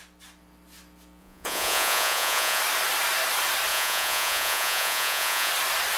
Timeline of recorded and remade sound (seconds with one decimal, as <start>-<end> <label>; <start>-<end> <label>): 0.0-1.2 recorded; 1.2-2.6 remade; 2.6-3.7 recorded; 3.7-5.5 remade; 5.5-6.0 recorded